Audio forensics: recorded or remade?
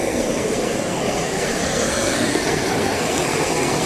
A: remade